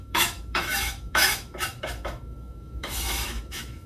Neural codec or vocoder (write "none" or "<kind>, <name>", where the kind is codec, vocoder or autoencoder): autoencoder, DAC-VAE